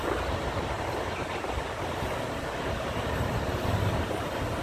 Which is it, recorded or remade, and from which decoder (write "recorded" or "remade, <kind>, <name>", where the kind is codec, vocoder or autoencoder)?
recorded